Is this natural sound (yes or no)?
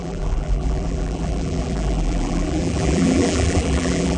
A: no